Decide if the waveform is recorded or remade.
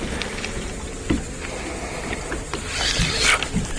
recorded